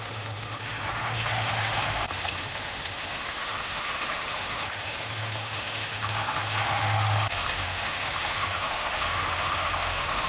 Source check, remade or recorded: remade